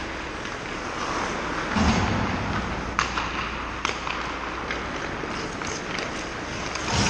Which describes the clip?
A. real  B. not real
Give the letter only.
A